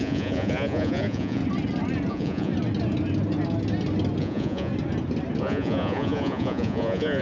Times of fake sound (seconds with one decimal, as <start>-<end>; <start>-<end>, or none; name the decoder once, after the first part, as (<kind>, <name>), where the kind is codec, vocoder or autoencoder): 0.0-1.4 (vocoder, Vocos); 2.1-2.5; 4.2-4.7; 5.4-7.2